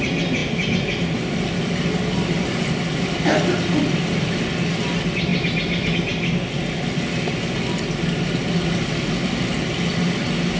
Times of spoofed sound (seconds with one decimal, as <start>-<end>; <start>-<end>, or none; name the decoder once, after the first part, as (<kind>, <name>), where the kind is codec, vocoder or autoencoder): none